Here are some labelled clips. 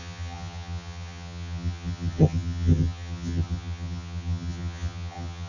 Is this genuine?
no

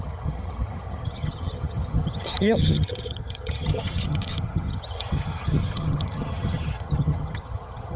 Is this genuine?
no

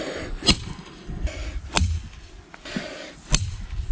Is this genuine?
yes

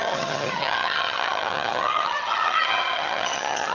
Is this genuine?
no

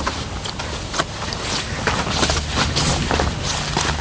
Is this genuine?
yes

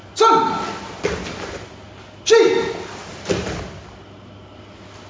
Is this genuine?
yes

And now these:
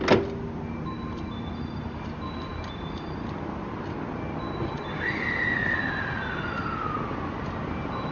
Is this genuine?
yes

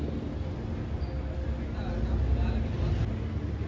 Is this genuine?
yes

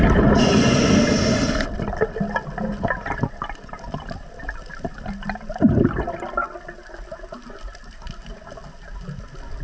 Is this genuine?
yes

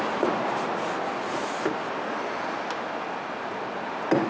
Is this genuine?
yes